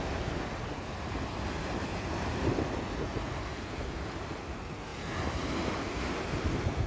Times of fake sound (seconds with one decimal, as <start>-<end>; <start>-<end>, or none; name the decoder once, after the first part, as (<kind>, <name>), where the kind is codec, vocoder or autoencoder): none